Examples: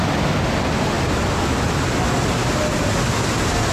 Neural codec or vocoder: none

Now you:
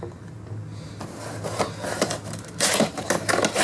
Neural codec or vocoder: none